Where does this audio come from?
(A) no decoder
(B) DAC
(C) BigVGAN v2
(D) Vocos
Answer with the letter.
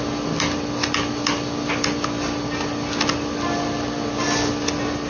A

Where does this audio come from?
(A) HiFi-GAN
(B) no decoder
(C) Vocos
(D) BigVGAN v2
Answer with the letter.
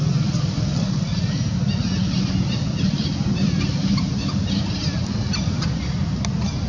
B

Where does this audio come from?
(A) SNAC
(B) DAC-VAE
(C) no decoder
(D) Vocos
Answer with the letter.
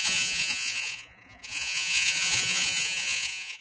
D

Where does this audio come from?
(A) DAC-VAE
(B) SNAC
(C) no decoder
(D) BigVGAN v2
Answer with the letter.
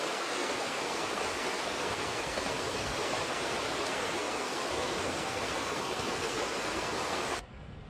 B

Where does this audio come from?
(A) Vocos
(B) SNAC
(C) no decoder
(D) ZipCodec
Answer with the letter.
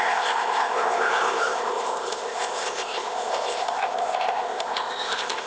D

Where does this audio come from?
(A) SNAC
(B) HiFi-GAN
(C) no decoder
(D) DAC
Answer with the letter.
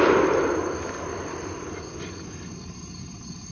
C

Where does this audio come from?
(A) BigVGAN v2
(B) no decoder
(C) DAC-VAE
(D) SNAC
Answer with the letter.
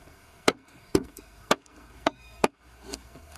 D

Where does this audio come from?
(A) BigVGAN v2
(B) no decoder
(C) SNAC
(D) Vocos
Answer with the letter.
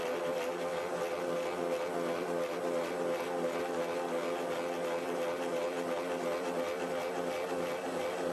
B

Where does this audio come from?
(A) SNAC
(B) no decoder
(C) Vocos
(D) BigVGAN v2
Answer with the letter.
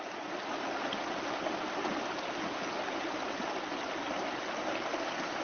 B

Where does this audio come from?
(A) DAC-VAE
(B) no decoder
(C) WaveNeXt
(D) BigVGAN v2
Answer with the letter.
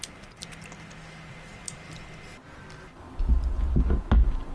B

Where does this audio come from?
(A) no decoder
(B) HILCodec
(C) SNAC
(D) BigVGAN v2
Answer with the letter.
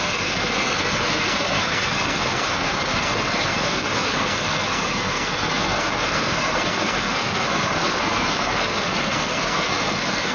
C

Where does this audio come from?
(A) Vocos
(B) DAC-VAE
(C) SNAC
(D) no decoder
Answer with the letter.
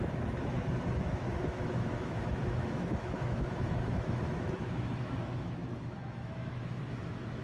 B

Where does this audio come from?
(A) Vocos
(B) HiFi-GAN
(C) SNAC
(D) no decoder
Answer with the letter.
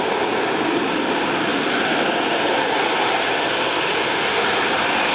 D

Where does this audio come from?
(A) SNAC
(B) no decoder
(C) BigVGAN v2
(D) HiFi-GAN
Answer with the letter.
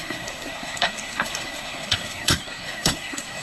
A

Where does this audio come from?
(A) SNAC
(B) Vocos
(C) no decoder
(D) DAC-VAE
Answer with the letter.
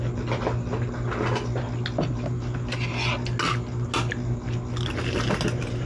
C